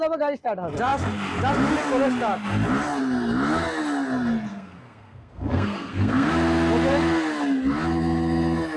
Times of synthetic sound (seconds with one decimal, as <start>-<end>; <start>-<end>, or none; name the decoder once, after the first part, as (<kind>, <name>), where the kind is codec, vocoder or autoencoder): 4.5-6.3 (codec, SNAC)